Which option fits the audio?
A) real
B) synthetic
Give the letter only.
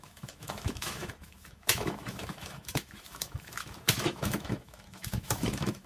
B